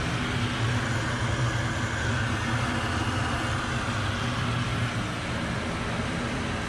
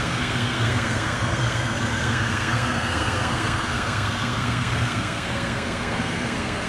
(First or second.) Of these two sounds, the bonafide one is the first